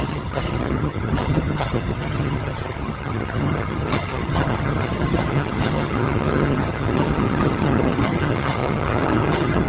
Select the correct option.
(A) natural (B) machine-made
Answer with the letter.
B